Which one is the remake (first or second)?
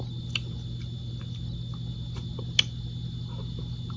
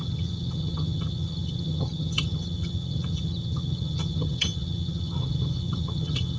second